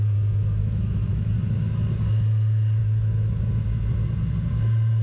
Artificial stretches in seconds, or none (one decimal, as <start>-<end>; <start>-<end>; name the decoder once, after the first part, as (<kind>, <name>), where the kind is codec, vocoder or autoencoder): 0.6-1.3 (autoencoder, DAC-VAE); 2.8-3.4